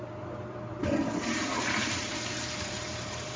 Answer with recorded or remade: remade